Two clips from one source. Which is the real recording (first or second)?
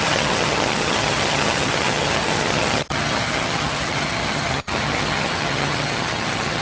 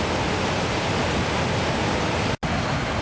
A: second